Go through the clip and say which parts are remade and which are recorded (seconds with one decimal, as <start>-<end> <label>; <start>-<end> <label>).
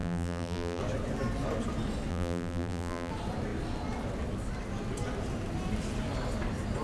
0.0-0.8 remade; 0.8-2.1 recorded; 2.1-3.1 remade; 3.1-6.8 recorded